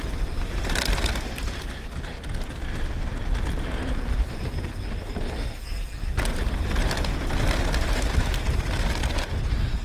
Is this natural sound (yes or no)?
yes